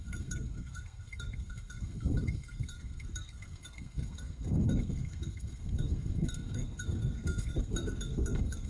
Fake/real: fake